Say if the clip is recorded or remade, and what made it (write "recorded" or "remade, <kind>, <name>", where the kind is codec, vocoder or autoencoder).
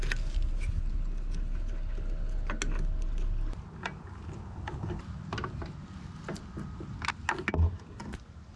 recorded